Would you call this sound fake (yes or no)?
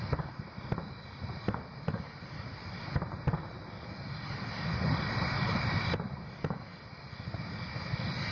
no